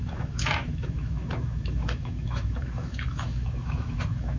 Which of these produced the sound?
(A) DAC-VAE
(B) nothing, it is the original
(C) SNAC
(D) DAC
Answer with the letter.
A